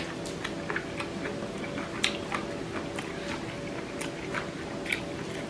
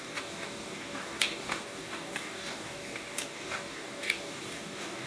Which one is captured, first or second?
first